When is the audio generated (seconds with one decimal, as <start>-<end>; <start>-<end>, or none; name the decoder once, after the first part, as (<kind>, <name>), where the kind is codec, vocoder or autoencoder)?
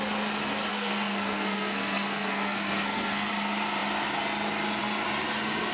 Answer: 0.7-3.3 (codec, SNAC)